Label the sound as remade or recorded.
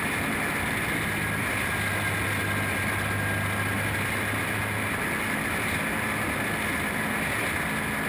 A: recorded